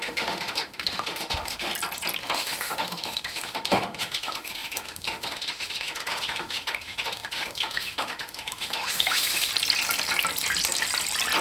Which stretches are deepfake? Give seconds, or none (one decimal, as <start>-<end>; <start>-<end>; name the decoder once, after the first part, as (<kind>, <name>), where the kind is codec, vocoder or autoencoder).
0.0-1.7 (autoencoder, DAC-VAE); 2.2-9.5